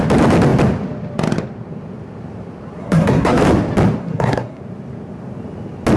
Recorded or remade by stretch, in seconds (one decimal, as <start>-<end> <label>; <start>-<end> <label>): 0.0-2.8 recorded; 2.8-3.4 remade; 3.4-4.0 recorded; 4.0-4.6 remade; 4.6-6.0 recorded